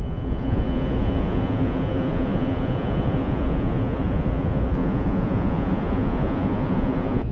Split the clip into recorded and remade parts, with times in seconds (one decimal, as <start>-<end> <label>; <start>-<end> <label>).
0.0-7.3 remade